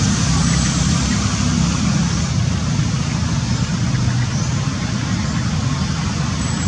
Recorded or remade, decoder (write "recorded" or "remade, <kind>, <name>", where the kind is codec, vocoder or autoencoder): recorded